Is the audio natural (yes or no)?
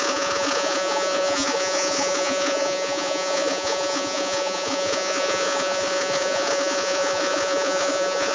no